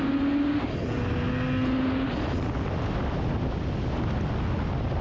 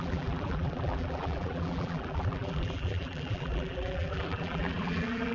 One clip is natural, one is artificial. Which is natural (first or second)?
first